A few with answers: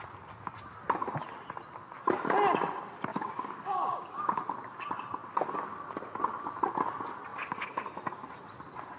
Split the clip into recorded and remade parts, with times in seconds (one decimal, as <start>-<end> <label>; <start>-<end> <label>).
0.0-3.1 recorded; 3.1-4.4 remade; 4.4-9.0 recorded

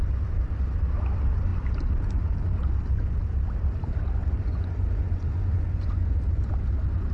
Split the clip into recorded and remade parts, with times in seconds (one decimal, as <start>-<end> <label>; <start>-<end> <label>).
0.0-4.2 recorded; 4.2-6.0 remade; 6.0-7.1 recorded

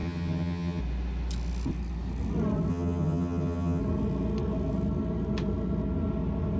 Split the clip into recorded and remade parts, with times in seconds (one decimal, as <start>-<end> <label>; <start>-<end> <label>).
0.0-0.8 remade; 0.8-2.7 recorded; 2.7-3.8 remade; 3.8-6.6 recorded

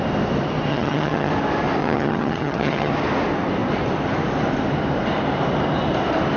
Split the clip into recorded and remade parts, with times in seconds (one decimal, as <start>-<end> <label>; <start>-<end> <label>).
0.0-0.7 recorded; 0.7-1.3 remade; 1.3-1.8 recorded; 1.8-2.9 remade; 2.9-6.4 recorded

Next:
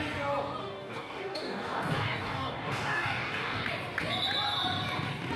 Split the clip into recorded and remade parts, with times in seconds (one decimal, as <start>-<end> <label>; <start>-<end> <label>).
0.0-0.6 recorded; 0.6-3.6 remade; 3.6-5.4 recorded